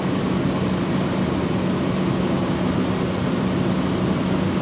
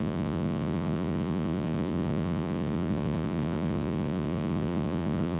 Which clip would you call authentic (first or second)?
first